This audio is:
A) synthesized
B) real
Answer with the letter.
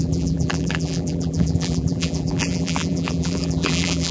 A